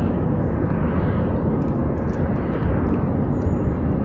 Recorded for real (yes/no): yes